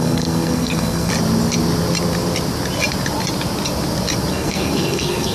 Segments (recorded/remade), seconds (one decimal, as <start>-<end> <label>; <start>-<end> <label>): 0.0-1.1 remade; 1.1-4.3 recorded; 4.3-5.3 remade